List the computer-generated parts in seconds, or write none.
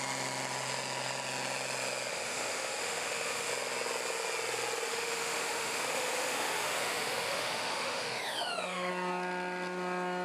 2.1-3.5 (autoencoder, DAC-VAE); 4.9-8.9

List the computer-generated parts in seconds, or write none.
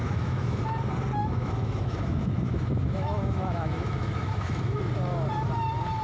0.0-0.6 (autoencoder, DAC-VAE); 1.2-4.8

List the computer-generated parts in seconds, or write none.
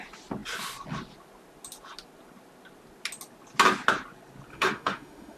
4.5-5.4 (autoencoder, DAC-VAE)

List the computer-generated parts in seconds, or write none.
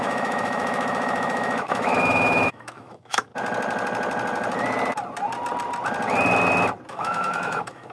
0.0-3.3 (autoencoder, DAC-VAE); 6.9-7.9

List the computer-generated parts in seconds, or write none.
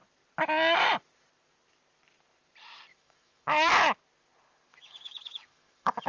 2.9-3.7 (autoencoder, DAC-VAE); 4.7-6.1